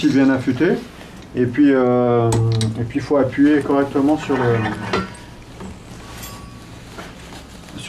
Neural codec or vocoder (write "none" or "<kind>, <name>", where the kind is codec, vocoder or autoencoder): none